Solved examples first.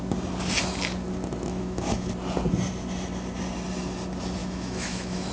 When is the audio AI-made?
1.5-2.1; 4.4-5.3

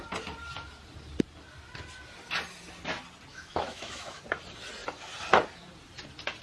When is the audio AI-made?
3.3-4.2

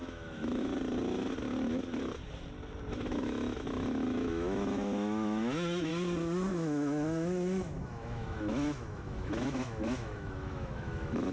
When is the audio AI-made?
0.0-0.7; 2.9-5.9; 6.5-11.3

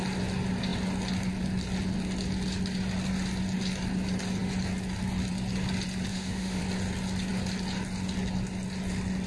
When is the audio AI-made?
6.1-6.6

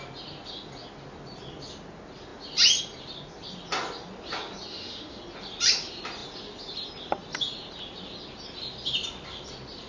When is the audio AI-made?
4.7-5.2